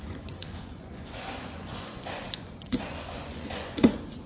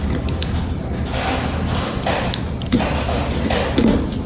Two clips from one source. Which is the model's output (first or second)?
first